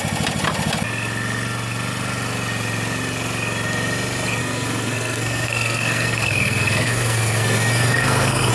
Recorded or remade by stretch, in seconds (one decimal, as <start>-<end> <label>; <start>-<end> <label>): 0.0-4.4 recorded; 4.4-8.5 remade